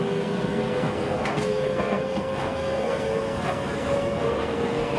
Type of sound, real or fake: fake